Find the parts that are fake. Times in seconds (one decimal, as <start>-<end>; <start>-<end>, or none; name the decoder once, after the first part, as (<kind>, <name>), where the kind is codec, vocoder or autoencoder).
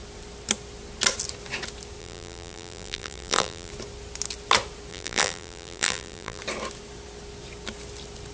2.0-3.7 (vocoder, BigVGAN v2); 4.9-6.4